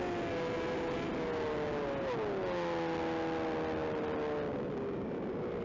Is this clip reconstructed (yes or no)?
no